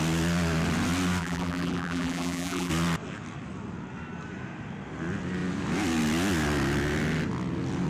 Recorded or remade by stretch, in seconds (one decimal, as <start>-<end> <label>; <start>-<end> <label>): 0.0-1.2 recorded; 1.2-2.7 remade; 2.7-7.9 recorded